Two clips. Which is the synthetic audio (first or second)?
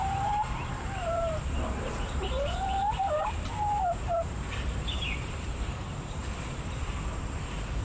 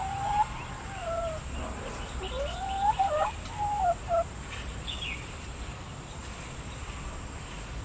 first